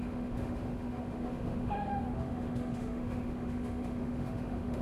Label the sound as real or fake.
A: fake